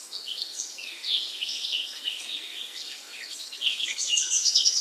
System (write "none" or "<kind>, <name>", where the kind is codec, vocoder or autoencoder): codec, SNAC